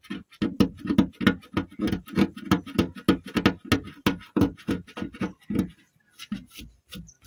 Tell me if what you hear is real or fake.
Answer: real